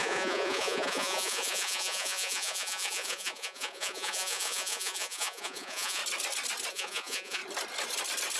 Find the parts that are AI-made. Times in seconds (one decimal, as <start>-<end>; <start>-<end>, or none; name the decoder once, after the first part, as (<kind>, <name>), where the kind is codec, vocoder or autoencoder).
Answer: 0.0-6.0 (vocoder, Vocos); 6.7-7.4